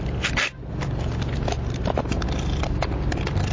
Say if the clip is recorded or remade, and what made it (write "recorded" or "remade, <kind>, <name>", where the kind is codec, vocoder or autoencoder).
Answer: recorded